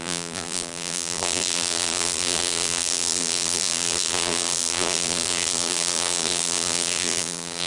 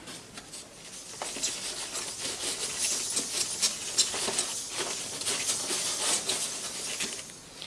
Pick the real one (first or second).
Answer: second